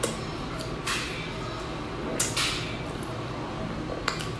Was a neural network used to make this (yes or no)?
no